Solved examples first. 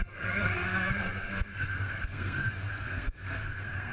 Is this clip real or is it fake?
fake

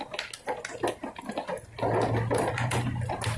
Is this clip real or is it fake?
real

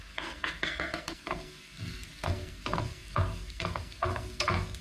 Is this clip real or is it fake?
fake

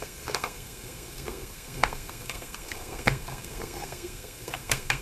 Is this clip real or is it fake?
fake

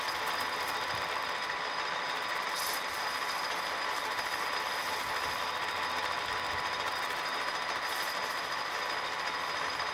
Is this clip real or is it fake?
real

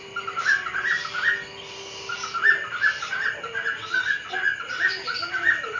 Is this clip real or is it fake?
real